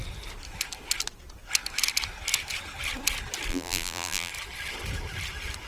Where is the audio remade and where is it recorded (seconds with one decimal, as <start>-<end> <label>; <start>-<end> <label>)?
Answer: 0.0-3.5 recorded; 3.5-4.3 remade; 4.3-5.7 recorded